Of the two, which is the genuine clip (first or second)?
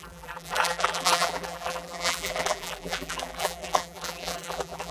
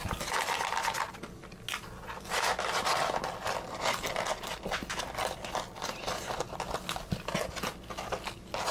second